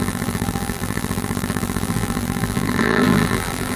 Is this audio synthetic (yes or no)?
yes